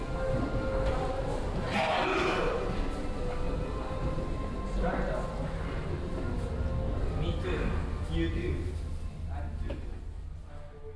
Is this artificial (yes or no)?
no